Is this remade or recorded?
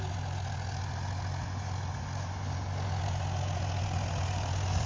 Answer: remade